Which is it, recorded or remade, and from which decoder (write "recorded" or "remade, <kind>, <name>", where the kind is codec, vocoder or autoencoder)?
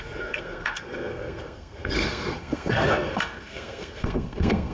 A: remade, codec, SNAC